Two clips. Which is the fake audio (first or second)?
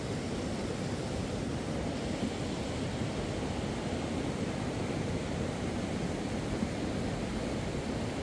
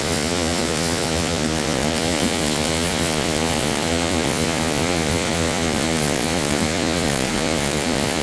second